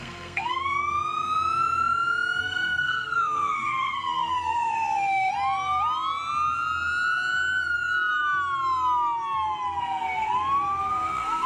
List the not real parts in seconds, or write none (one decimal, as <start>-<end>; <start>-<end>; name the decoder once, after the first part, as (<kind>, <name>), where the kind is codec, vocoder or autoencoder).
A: 0.0-0.7 (codec, SNAC); 2.4-5.3; 9.8-10.3; 10.9-11.5